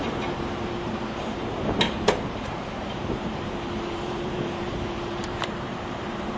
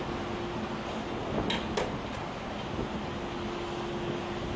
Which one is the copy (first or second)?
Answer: first